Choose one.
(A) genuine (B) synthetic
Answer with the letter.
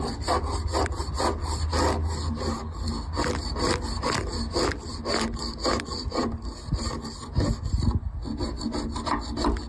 A